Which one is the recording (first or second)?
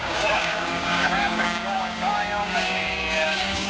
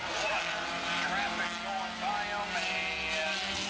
second